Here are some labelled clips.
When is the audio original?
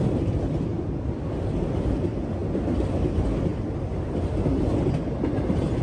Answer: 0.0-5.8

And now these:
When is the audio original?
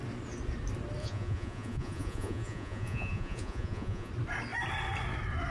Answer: 0.0-1.0; 4.1-5.5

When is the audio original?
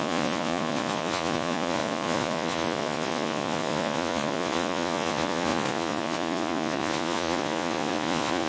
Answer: none